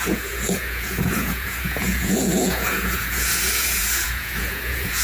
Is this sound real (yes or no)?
no